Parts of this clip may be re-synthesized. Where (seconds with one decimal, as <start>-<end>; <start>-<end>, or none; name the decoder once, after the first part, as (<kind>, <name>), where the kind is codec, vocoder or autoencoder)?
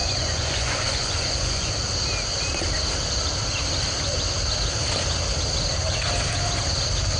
0.0-1.7 (vocoder, Vocos)